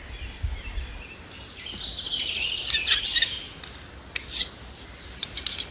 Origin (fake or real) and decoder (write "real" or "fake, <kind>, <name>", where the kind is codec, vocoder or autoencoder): real